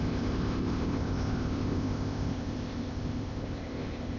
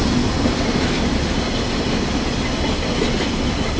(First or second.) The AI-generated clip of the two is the first